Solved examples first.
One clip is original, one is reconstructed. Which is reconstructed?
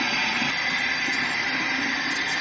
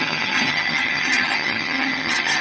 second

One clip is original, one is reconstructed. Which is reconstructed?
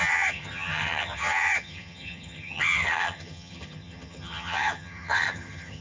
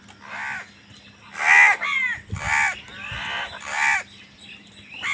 first